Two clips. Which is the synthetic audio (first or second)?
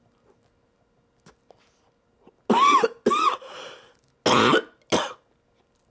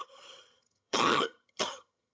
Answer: second